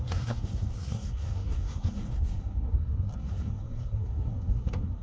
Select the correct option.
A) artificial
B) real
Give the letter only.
A